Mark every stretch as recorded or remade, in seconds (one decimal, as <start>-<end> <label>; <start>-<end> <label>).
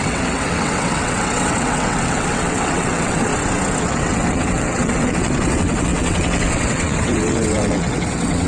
0.0-3.3 remade; 3.3-3.8 recorded; 3.8-8.5 remade